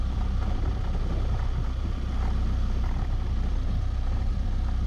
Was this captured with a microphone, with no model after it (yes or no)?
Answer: yes